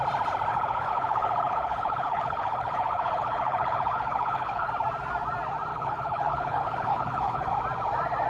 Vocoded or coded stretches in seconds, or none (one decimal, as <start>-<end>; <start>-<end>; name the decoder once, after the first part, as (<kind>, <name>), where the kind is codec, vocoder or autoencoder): 0.5-4.7 (codec, HILCodec); 5.7-7.5